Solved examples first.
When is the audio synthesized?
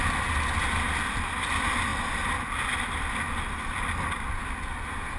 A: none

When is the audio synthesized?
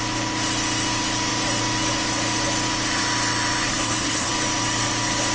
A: 3.7-4.3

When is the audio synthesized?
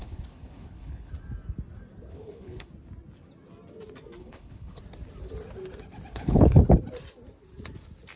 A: 0.0-1.1; 2.1-2.7; 4.2-4.8; 6.1-6.6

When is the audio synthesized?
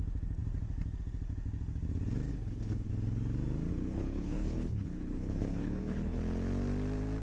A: 2.3-2.9; 3.7-6.2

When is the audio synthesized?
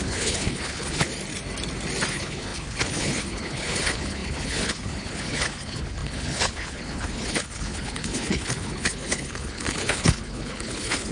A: 0.0-1.1; 2.1-11.1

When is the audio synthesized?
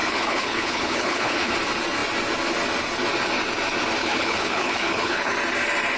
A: 0.0-1.5; 4.0-5.3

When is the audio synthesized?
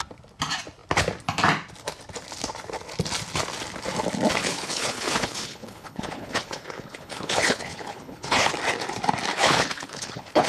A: 4.4-8.5; 9.3-10.5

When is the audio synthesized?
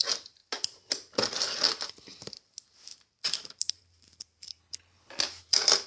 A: 4.6-5.1